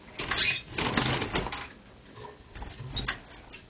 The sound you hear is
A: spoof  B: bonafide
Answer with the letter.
B